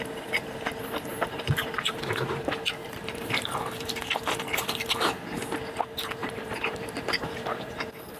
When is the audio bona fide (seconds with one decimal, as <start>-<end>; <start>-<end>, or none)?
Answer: 0.0-1.1; 2.1-2.8; 3.6-6.2; 7.7-8.2